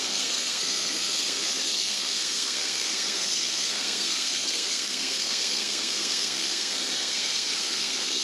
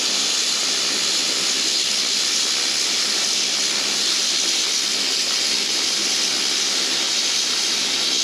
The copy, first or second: first